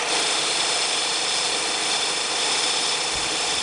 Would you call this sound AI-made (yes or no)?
no